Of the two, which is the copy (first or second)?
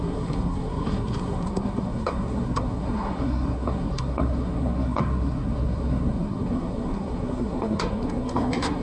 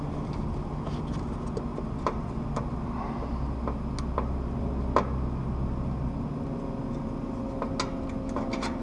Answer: first